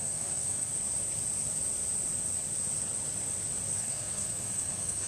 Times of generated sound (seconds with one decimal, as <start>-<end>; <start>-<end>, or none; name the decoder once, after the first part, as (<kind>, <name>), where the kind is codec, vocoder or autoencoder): 0.0-0.7 (codec, SNAC); 3.8-5.1